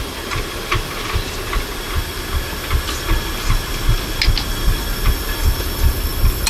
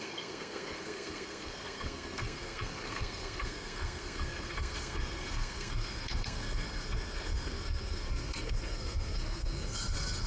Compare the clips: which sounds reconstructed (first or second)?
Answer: second